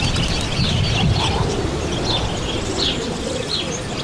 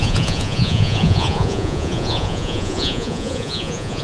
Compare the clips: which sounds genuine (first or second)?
first